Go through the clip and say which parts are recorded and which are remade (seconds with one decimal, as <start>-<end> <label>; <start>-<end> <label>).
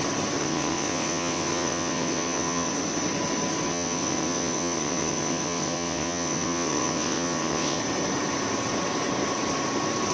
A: 0.0-0.4 recorded; 0.4-2.7 remade; 2.7-3.7 recorded; 3.7-7.8 remade; 7.8-10.1 recorded